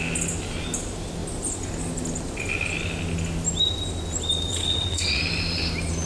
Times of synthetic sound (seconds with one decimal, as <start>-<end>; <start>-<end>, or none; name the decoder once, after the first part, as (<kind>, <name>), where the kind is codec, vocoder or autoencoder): 4.5-5.2 (vocoder, WaveNeXt)